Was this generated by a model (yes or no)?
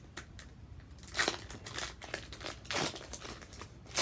no